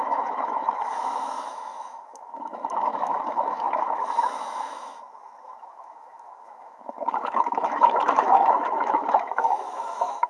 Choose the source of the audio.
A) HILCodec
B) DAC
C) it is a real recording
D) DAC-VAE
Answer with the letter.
D